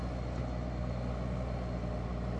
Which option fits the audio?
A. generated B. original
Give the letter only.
B